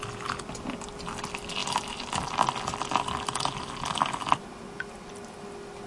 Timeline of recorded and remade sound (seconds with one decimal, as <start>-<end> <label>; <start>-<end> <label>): 0.0-5.9 recorded